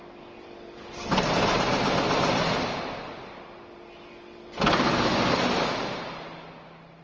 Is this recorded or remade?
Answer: recorded